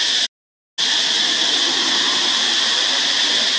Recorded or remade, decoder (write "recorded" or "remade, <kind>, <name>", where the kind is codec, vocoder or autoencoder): recorded